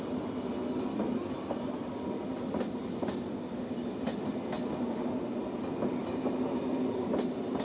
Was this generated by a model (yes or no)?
no